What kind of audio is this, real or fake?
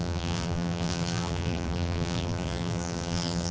fake